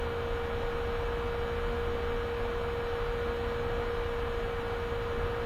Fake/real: real